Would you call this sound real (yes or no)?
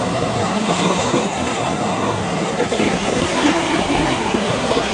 no